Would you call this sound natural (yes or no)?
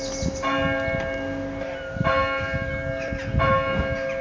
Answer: yes